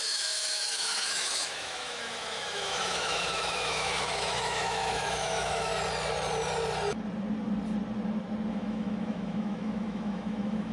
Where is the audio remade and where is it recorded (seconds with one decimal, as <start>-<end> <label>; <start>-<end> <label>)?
0.0-5.7 remade; 5.7-8.5 recorded; 8.5-10.7 remade